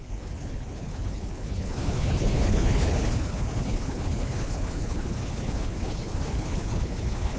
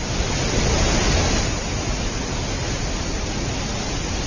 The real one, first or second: second